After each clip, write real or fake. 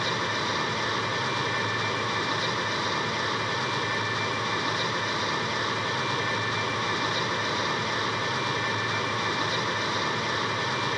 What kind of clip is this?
real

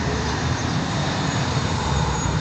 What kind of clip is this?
fake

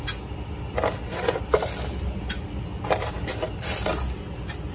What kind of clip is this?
real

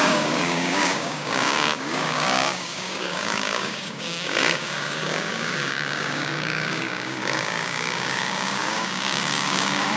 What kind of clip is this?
fake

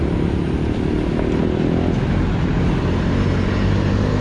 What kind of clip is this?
real